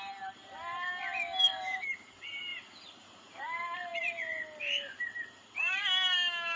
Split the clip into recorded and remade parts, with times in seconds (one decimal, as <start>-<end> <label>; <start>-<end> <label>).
0.0-3.9 remade; 3.9-4.6 recorded; 4.6-6.6 remade